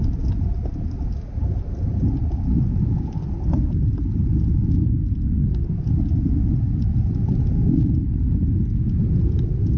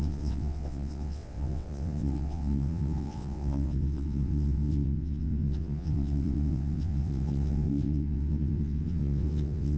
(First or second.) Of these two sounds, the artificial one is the second